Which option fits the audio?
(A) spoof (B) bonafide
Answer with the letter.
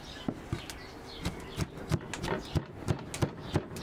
B